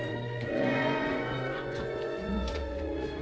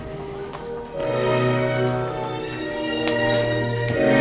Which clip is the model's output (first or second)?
first